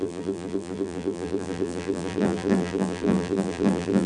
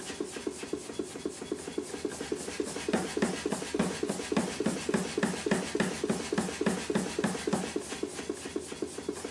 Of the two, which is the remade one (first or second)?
first